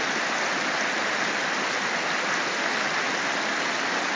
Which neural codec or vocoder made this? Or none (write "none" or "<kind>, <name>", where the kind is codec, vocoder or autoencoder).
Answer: none